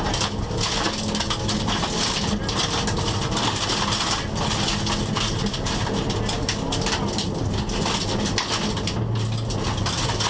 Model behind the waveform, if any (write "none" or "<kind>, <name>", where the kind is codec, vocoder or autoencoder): none